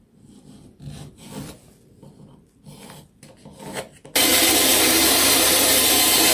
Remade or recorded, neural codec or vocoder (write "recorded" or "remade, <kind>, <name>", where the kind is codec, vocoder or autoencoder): recorded